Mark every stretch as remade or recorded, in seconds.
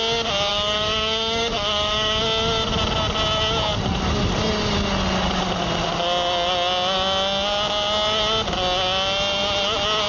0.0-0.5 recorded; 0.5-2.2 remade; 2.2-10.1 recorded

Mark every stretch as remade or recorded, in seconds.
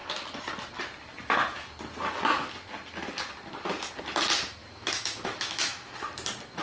0.0-4.6 recorded; 4.6-5.9 remade; 5.9-6.6 recorded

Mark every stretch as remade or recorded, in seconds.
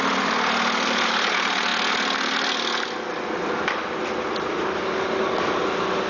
0.0-6.1 recorded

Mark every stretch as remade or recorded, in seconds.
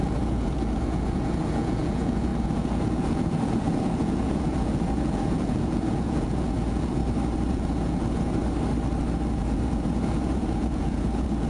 0.0-7.0 remade; 7.0-7.5 recorded; 7.5-8.4 remade; 8.4-9.3 recorded; 9.3-11.5 remade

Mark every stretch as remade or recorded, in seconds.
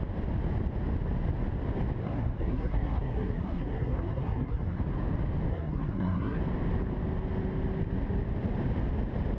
0.0-2.0 recorded; 2.0-4.8 remade; 4.8-5.5 recorded; 5.5-6.4 remade; 6.4-9.4 recorded